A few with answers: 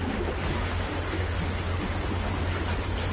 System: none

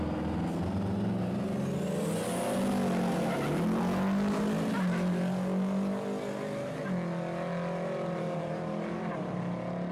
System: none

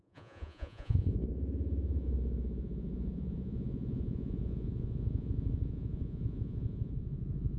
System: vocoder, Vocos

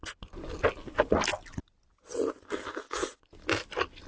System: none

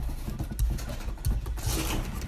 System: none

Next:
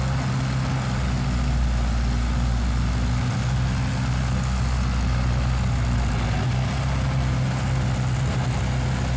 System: none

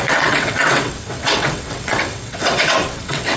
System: vocoder, WaveNeXt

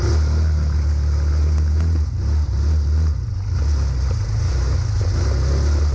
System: none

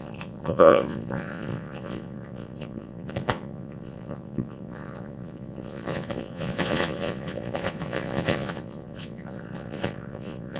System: vocoder, Vocos